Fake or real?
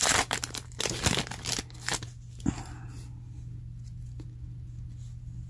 real